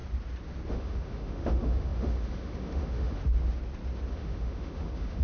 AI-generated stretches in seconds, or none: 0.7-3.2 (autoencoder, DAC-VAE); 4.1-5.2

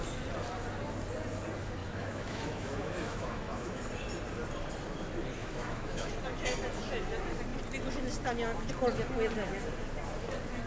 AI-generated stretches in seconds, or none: 1.8-3.8 (autoencoder, DAC-VAE); 5.4-6.1